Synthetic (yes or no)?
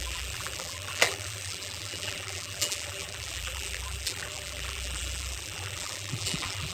yes